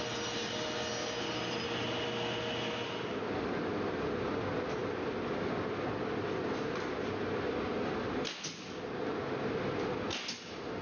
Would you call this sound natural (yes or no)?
yes